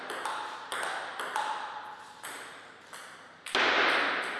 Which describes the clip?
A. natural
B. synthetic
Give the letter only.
A